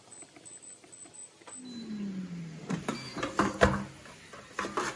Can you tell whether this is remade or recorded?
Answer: recorded